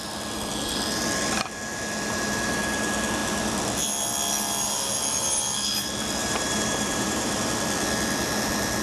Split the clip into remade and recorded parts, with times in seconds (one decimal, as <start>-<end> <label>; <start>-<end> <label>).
0.0-6.2 recorded; 6.2-7.5 remade; 7.5-8.8 recorded